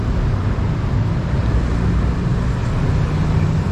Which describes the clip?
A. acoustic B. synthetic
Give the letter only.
A